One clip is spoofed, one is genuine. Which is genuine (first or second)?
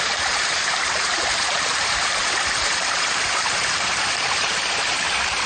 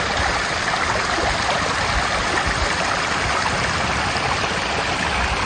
second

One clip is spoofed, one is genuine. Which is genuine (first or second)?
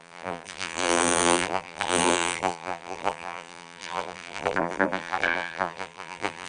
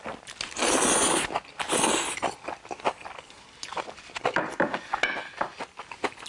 second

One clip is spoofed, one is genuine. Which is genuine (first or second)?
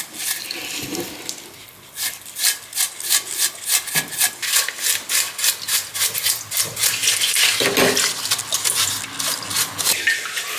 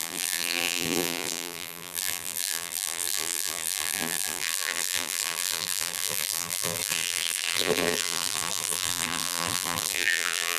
first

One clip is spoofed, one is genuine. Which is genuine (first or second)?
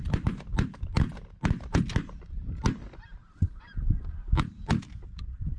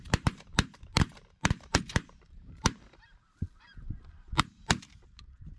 first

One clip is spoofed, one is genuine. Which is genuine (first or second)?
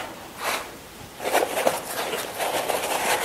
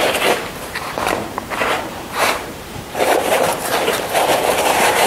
first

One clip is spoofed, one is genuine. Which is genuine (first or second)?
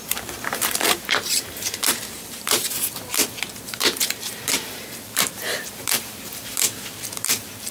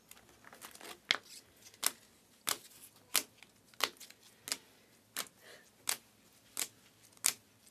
second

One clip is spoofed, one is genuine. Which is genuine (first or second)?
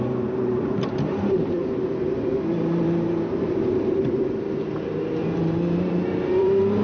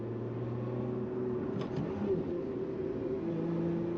second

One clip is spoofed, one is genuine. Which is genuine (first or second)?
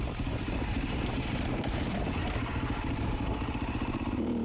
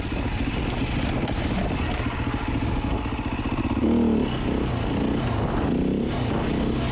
second